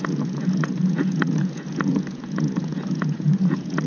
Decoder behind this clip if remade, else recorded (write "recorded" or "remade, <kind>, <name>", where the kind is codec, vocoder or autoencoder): remade, vocoder, Vocos